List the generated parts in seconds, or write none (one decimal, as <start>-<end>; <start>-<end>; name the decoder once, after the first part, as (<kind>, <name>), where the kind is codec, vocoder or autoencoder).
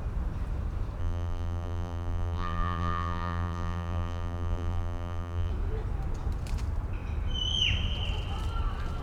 1.0-5.5 (vocoder, BigVGAN v2)